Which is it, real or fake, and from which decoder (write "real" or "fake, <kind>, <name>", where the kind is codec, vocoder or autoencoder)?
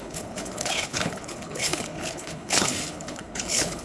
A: fake, codec, HILCodec